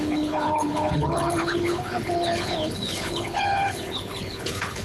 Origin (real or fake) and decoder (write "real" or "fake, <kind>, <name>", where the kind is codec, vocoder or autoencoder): fake, codec, HILCodec